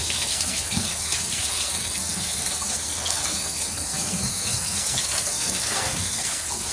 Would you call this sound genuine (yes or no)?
no